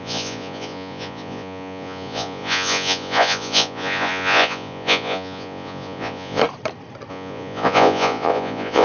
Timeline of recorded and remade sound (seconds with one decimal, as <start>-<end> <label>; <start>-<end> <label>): 0.0-6.4 remade; 6.4-7.1 recorded; 7.1-8.8 remade